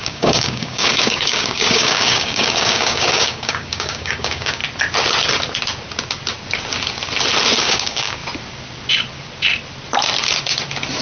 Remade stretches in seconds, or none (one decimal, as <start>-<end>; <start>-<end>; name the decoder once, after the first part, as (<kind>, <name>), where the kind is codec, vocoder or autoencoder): 0.0-4.6 (codec, DAC); 7.6-8.2